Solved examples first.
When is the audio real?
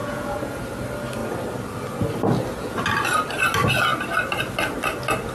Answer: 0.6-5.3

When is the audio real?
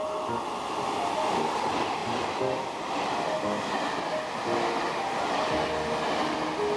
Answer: 0.0-6.8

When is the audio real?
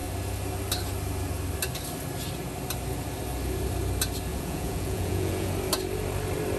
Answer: 0.0-4.3; 5.5-6.6